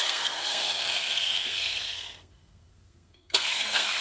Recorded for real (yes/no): no